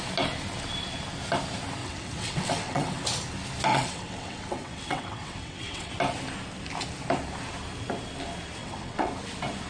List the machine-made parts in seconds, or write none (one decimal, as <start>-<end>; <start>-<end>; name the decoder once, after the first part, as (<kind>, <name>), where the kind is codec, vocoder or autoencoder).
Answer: 1.8-3.0 (vocoder, WaveNeXt); 3.7-5.9; 8.6-9.1